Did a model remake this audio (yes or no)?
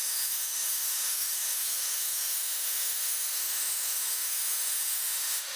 yes